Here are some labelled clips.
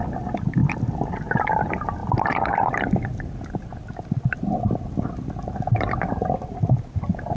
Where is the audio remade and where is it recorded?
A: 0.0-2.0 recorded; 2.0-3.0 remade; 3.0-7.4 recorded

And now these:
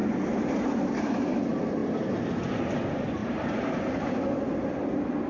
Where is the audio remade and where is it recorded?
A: 0.0-3.2 recorded; 3.2-4.5 remade; 4.5-5.3 recorded

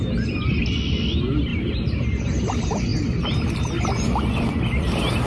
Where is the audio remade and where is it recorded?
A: 0.0-5.3 recorded

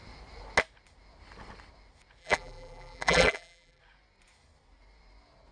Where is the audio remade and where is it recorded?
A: 0.0-2.2 recorded; 2.2-3.8 remade; 3.8-5.5 recorded

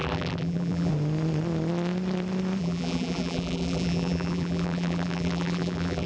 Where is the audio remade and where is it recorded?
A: 0.0-0.9 remade; 0.9-2.6 recorded; 2.6-6.1 remade